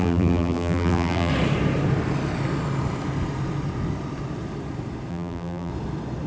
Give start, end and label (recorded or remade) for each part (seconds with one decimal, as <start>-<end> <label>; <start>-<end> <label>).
0.0-1.3 remade; 1.3-5.1 recorded; 5.1-5.7 remade; 5.7-6.3 recorded